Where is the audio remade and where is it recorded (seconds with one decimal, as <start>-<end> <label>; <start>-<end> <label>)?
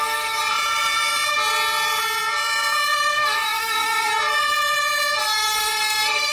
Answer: 0.0-0.4 remade; 0.4-3.1 recorded; 3.1-4.1 remade; 4.1-5.2 recorded; 5.2-6.3 remade